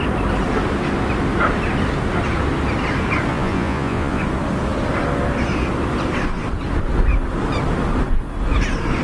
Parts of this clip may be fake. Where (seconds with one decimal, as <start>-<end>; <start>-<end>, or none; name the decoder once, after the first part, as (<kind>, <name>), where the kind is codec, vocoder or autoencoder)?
3.3-4.2 (vocoder, Vocos)